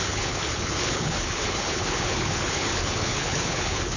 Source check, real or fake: fake